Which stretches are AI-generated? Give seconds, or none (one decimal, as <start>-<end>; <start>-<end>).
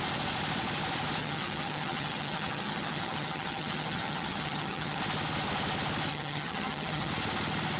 1.2-5.0; 6.1-7.1